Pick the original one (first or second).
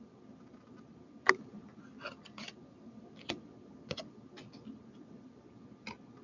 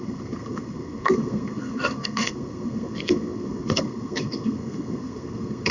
first